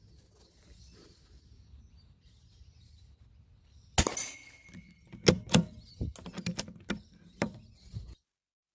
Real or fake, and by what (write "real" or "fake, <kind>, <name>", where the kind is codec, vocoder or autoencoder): real